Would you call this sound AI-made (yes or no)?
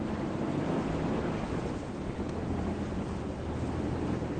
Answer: no